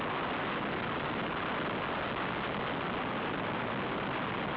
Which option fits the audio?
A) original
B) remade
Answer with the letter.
A